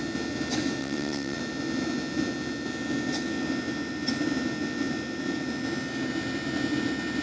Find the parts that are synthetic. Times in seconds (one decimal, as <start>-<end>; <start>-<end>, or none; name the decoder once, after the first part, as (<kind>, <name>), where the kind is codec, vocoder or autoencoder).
0.8-1.4 (vocoder, WaveNeXt)